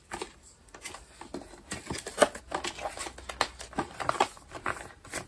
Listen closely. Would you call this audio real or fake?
real